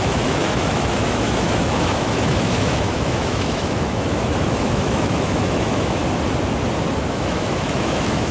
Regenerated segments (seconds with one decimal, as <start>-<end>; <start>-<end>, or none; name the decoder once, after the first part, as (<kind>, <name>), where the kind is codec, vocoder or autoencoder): 0.0-6.0 (autoencoder, DAC-VAE); 7.1-8.3